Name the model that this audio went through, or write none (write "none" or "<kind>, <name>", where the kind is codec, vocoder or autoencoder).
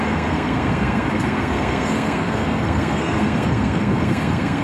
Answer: codec, SNAC